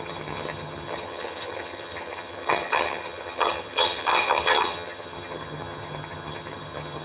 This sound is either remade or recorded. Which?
remade